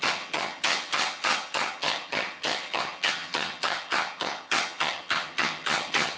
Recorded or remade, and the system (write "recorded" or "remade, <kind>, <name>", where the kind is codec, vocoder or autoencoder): remade, vocoder, HiFi-GAN